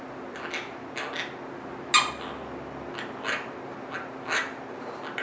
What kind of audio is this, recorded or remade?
recorded